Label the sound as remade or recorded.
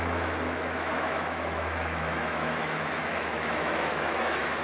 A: remade